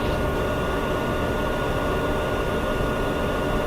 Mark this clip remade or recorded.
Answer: recorded